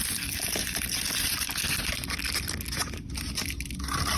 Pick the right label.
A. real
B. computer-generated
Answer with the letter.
A